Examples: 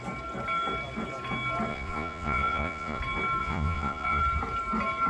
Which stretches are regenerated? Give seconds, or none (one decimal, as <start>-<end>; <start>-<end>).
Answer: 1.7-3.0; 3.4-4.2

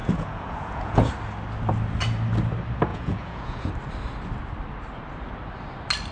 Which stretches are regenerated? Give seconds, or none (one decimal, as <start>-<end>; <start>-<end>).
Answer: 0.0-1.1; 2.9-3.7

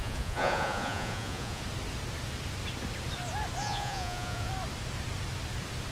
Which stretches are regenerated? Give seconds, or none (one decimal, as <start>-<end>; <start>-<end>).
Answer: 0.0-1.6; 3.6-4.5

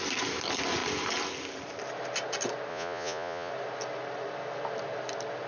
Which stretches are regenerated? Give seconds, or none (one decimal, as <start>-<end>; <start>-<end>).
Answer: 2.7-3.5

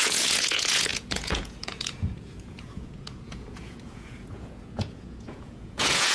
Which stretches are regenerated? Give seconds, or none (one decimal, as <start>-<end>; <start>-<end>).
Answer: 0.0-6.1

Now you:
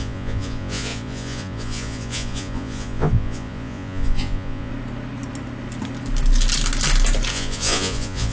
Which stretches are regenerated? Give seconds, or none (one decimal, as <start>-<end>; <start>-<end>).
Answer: 0.0-4.7; 7.3-8.3